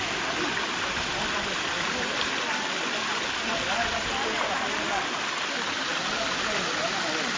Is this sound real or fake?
real